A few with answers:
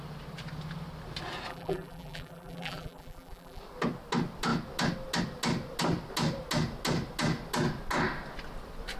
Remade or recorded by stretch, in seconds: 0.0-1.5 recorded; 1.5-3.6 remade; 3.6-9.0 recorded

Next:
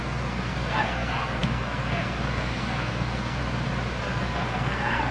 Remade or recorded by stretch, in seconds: 0.0-3.4 remade; 3.4-4.0 recorded; 4.0-5.1 remade

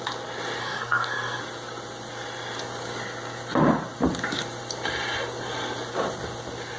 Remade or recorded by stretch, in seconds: 0.0-0.6 recorded; 0.6-1.4 remade; 1.4-6.8 recorded